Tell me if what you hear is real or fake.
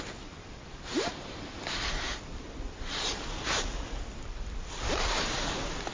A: real